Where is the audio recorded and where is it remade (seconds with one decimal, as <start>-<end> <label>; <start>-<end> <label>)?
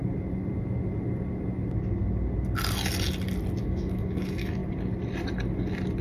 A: 0.0-3.6 recorded; 3.6-4.6 remade; 4.6-6.0 recorded